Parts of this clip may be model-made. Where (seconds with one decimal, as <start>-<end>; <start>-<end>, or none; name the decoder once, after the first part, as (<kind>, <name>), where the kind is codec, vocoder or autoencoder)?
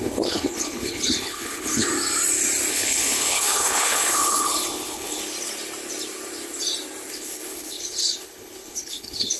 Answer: 0.0-1.9 (codec, HILCodec); 2.7-5.2; 7.1-9.4